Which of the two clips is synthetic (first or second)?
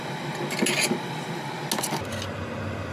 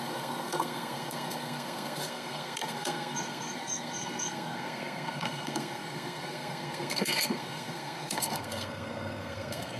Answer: second